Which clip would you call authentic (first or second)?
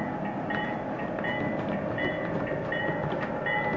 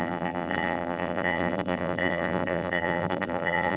first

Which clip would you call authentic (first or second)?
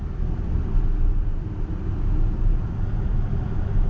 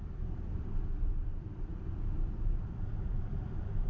first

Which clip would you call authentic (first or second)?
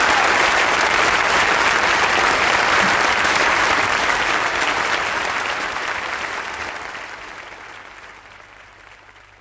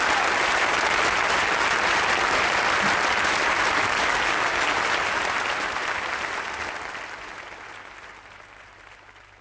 second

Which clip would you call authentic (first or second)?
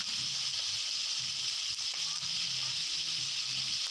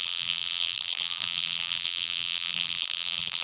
first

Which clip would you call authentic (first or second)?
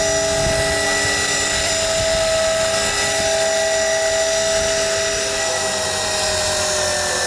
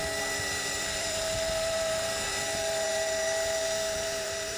first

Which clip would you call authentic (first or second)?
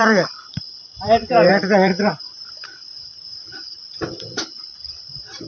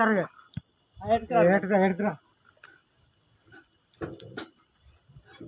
second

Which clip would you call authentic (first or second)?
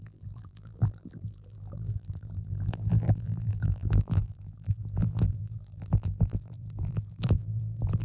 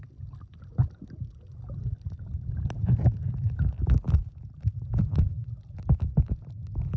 second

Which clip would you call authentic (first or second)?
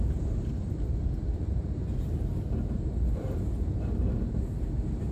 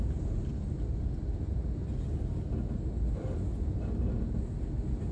second